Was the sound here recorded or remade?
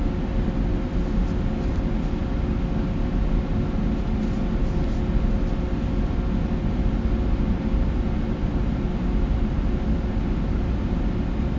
recorded